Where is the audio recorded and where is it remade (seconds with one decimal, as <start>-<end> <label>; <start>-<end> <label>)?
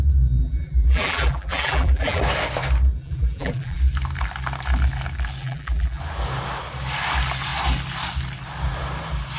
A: 0.0-0.4 recorded; 0.4-2.2 remade; 2.2-3.0 recorded; 3.0-3.8 remade; 3.8-5.4 recorded; 5.4-6.0 remade; 6.0-9.4 recorded